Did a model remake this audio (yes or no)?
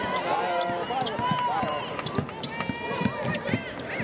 no